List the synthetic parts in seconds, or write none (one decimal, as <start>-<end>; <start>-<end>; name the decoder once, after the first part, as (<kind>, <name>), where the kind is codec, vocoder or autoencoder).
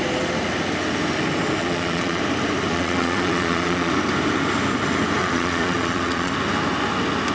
1.6-2.2 (vocoder, Vocos); 2.7-3.9; 5.2-6.3